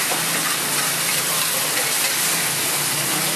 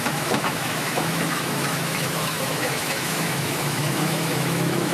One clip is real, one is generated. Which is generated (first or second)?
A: second